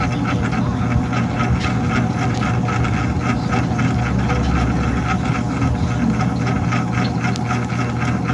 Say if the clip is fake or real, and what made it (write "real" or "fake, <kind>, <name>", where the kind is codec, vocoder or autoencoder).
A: real